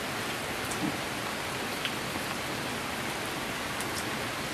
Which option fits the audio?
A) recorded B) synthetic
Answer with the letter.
A